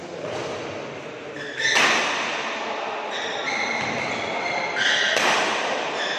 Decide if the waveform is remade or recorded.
recorded